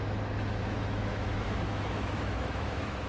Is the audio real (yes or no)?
no